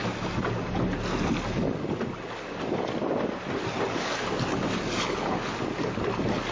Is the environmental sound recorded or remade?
recorded